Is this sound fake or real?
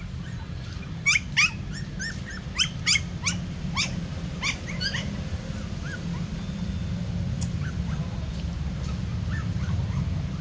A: real